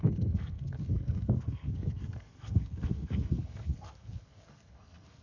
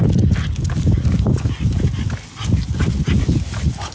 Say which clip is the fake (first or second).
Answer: first